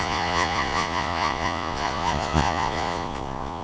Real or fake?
fake